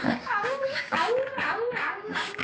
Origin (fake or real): fake